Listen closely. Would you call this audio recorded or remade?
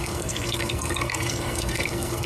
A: remade